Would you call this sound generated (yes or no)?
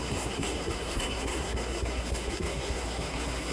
yes